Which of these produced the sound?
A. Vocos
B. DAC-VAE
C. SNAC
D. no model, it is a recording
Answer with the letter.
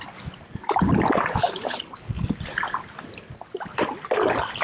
D